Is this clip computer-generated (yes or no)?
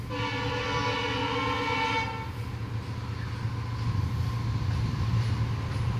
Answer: no